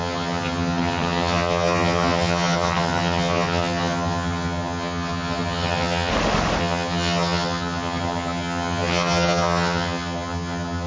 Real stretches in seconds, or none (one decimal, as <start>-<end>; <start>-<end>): 6.1-6.6